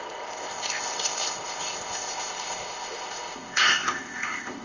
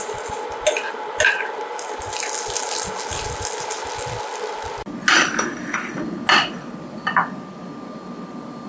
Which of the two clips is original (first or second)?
second